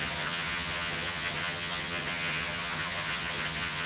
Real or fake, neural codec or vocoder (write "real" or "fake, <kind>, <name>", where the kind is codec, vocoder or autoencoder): fake, vocoder, HiFi-GAN